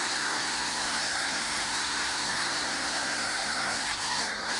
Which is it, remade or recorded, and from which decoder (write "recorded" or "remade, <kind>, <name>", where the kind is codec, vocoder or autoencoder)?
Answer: remade, codec, SNAC